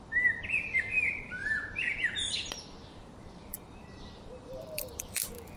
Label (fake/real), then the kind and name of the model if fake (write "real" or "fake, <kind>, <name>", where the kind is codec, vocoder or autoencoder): fake, vocoder, BigVGAN v2